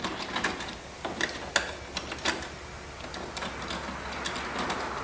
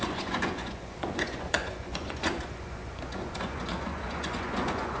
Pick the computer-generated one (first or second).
second